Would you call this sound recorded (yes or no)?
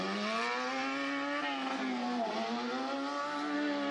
yes